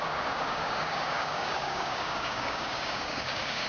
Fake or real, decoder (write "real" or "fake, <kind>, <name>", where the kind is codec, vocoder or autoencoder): fake, codec, DAC